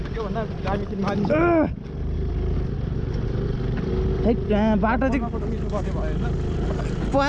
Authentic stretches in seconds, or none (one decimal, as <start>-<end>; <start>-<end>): 0.0-7.3